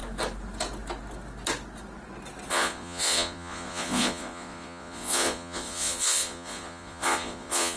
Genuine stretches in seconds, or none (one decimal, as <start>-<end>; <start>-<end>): 0.0-2.5

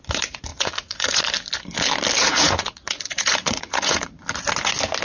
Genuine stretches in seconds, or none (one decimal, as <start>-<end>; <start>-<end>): 0.0-0.5; 1.2-2.2; 4.2-5.0

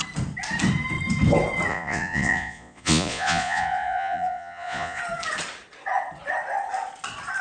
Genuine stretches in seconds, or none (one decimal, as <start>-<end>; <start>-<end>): 0.0-1.7; 5.0-7.4

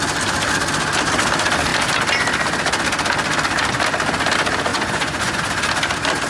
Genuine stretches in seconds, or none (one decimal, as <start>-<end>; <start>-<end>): 0.0-4.7; 5.4-6.3